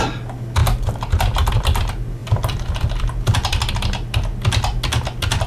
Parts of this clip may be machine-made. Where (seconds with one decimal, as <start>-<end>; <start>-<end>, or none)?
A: none